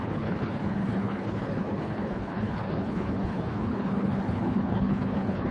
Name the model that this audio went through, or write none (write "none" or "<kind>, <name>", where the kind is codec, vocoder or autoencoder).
codec, HILCodec